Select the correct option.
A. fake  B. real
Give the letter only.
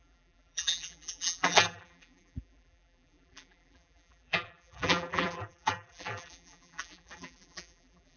A